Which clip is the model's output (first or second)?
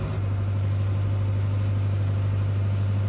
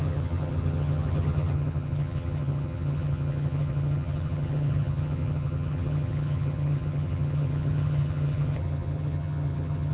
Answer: second